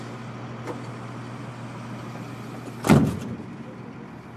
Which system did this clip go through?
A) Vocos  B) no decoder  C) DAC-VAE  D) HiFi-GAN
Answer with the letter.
B